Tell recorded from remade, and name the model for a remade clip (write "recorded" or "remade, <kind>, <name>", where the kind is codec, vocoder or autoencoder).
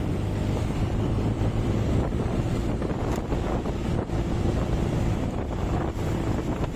remade, vocoder, BigVGAN v2